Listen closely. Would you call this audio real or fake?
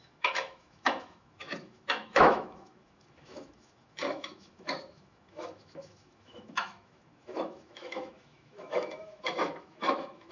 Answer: fake